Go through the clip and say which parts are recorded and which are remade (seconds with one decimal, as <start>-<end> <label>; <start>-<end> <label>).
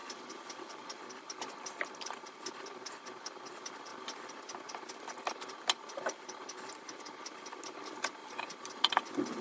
0.0-8.2 recorded; 8.2-8.9 remade; 8.9-9.4 recorded